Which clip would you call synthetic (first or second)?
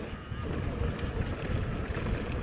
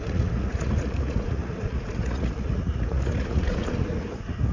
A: second